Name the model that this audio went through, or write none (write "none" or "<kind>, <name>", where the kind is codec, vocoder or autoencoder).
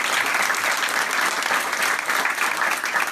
none